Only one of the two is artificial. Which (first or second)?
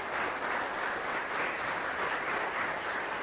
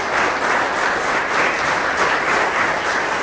first